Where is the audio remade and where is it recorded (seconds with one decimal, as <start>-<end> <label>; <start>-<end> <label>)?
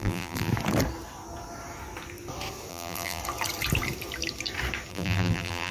0.0-0.5 remade; 0.5-2.7 recorded; 2.7-3.2 remade; 3.2-4.9 recorded; 4.9-5.7 remade